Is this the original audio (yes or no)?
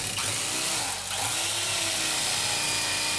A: yes